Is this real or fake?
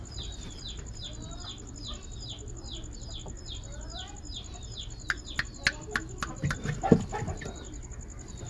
real